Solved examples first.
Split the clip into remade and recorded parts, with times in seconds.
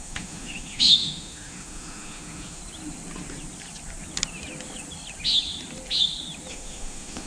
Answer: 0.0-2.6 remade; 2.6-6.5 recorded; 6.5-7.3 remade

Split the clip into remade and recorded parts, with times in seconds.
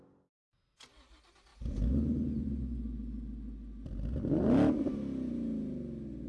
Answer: 0.0-6.3 recorded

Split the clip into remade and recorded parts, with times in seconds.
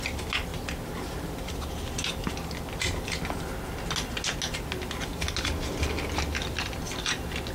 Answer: 0.0-7.5 recorded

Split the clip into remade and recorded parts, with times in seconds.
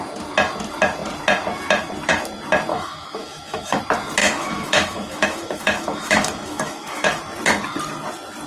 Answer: 0.0-2.7 recorded; 2.7-3.8 remade; 3.8-4.2 recorded; 4.2-7.2 remade; 7.2-8.5 recorded